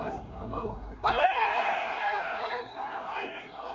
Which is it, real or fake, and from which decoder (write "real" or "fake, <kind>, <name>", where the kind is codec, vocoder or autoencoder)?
fake, codec, SNAC